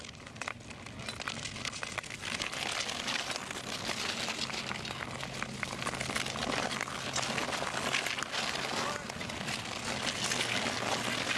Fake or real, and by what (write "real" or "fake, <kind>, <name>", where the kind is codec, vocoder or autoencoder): real